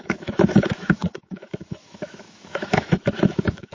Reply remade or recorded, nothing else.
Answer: remade